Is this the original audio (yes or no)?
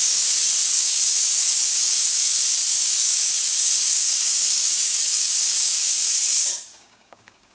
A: no